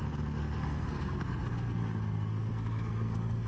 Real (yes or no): no